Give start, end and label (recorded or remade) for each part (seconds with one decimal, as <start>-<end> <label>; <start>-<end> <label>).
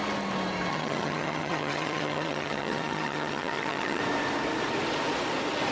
0.0-0.7 recorded; 0.7-4.0 remade; 4.0-5.7 recorded